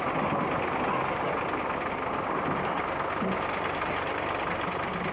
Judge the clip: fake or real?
real